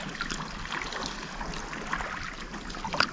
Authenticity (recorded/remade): recorded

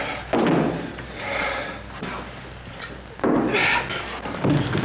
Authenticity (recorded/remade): recorded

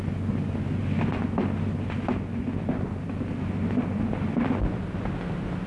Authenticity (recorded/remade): recorded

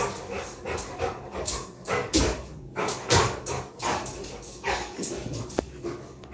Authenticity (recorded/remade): remade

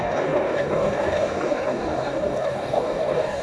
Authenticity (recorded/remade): remade